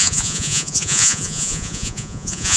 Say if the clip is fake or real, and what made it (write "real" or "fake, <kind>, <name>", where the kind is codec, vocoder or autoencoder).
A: fake, vocoder, Vocos